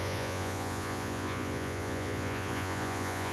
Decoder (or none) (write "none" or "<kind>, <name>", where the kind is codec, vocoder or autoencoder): vocoder, Vocos